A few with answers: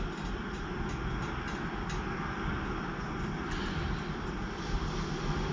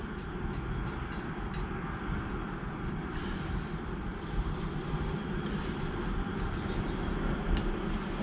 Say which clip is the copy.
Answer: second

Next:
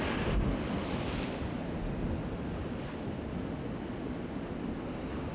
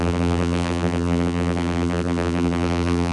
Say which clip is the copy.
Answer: second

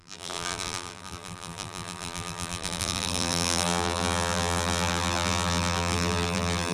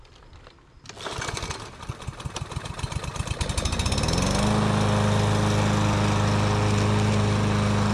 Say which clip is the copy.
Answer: first